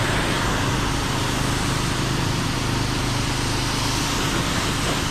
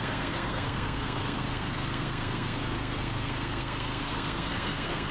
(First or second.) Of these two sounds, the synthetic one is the second